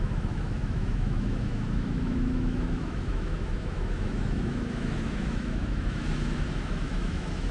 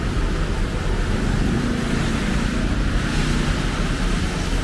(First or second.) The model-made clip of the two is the first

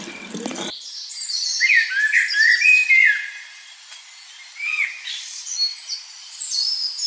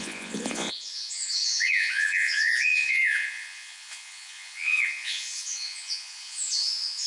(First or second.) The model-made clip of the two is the second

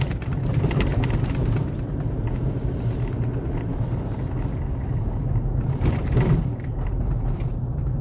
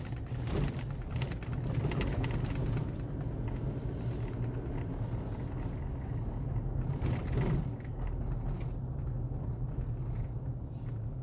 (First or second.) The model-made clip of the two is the first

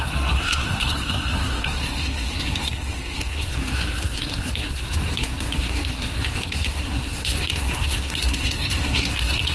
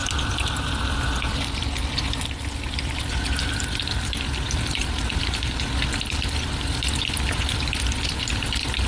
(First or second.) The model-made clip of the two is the first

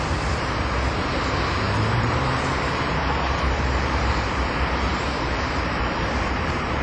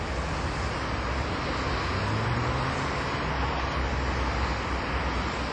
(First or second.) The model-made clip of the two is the first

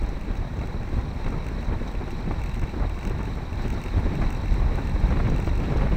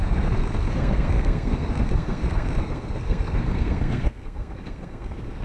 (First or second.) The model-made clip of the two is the second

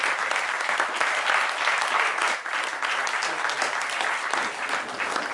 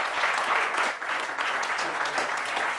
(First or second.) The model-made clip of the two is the second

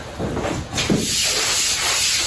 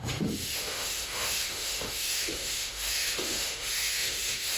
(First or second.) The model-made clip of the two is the second